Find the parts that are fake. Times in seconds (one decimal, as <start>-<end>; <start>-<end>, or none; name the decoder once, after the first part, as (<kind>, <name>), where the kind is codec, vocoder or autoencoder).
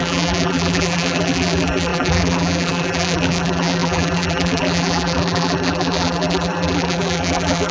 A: 0.0-7.7 (vocoder, BigVGAN v2)